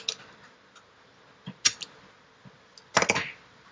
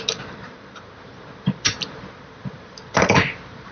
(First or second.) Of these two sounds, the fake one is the second